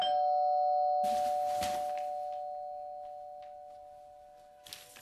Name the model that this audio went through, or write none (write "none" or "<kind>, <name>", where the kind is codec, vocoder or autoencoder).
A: none